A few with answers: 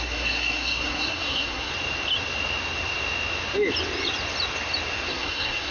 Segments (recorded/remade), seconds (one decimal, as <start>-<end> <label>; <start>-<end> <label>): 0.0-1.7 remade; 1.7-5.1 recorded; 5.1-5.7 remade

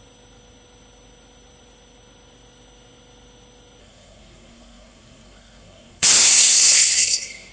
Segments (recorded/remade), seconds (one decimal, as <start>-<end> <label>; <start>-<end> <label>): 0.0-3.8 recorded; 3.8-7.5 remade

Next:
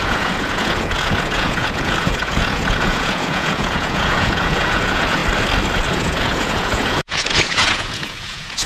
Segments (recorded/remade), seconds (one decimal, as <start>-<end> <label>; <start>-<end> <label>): 0.0-5.2 remade; 5.2-5.9 recorded; 5.9-8.7 remade

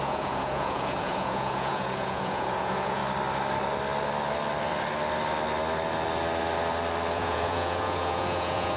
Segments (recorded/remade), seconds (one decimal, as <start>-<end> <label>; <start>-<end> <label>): 0.0-3.0 remade; 3.0-7.1 recorded; 7.1-8.8 remade

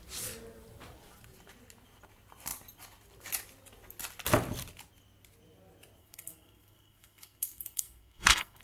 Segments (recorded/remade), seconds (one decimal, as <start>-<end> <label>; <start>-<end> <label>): 0.0-6.0 recorded; 6.0-8.6 remade

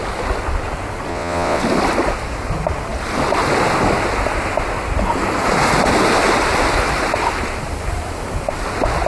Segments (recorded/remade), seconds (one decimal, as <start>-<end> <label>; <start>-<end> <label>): 0.0-1.1 recorded; 1.1-1.6 remade; 1.6-9.1 recorded